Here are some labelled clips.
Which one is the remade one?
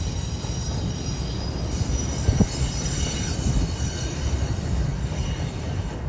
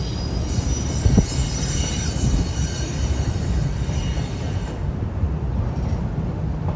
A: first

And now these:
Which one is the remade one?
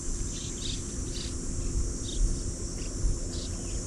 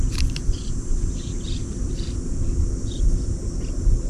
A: second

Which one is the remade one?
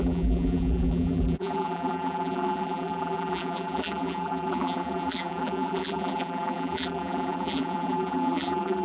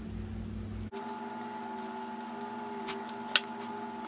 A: first